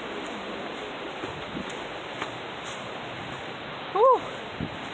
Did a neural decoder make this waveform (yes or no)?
no